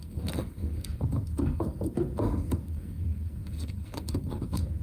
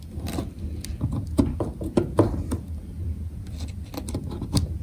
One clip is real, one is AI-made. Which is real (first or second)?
second